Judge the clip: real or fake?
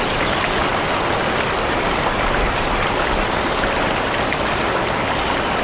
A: real